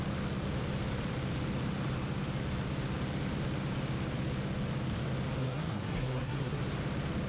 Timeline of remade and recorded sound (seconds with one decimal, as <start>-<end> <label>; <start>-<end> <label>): 0.0-5.4 recorded; 5.4-6.6 remade; 6.6-7.3 recorded